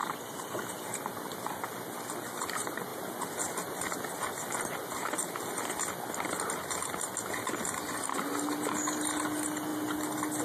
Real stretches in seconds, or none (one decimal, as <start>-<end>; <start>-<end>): 0.0-10.4